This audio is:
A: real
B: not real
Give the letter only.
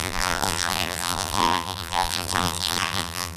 B